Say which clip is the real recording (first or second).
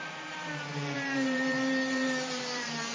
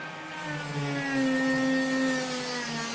second